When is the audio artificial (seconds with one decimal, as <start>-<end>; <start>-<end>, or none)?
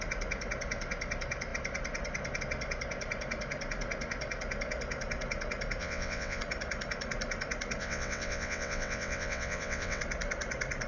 5.8-6.4; 7.8-10.0